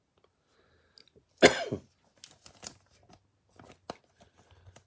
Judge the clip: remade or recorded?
recorded